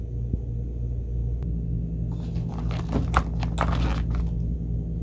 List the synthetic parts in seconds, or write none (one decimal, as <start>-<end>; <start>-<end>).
none